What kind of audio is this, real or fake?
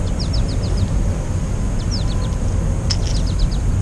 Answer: real